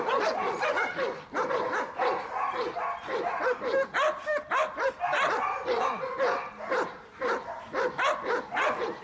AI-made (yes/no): no